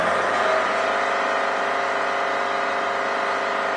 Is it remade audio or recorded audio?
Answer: recorded